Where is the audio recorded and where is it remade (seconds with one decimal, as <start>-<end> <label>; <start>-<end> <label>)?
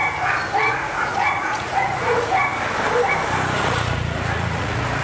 0.0-0.7 recorded; 0.7-2.5 remade; 2.5-3.6 recorded; 3.6-5.0 remade